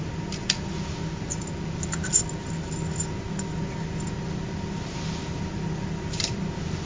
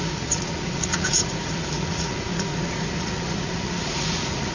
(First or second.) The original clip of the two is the first